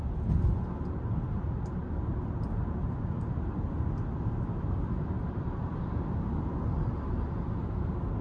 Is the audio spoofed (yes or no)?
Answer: no